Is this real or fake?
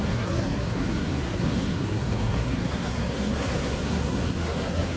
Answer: fake